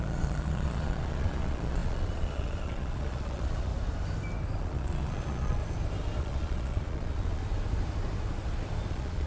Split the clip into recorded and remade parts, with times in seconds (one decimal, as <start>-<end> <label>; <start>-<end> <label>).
0.0-3.7 remade; 3.7-4.6 recorded; 4.6-5.6 remade; 5.6-6.2 recorded; 6.2-7.4 remade; 7.4-8.9 recorded; 8.9-9.3 remade

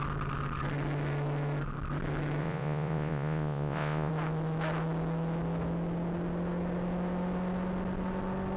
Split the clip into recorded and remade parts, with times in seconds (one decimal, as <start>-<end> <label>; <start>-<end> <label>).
0.0-2.4 recorded; 2.4-4.1 remade; 4.1-8.6 recorded

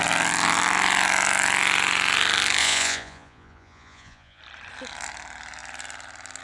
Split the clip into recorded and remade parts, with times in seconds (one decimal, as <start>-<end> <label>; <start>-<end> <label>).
0.0-2.6 recorded; 2.6-4.4 remade; 4.4-6.4 recorded

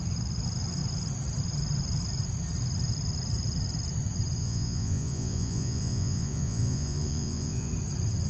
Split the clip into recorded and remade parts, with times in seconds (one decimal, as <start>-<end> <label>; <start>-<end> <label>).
0.0-4.4 recorded; 4.4-7.7 remade; 7.7-8.3 recorded